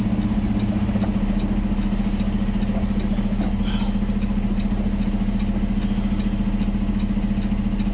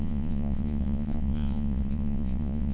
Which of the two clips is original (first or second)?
first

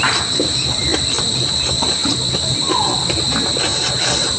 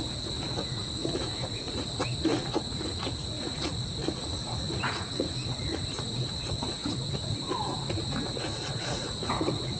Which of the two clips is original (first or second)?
first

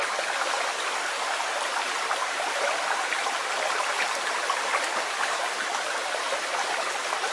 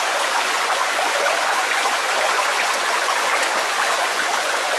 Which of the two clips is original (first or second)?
first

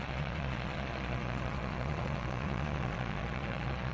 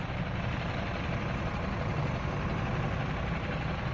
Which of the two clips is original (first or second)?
second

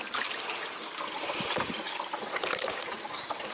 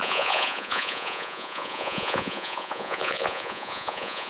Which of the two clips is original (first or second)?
first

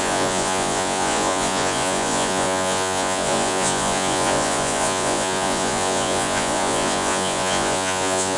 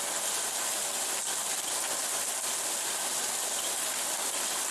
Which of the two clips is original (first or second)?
second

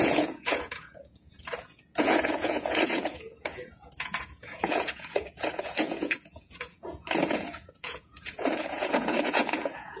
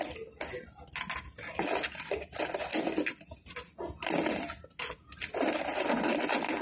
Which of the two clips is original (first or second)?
second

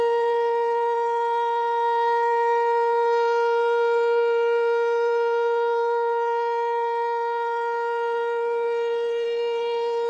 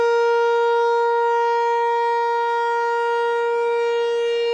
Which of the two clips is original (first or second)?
second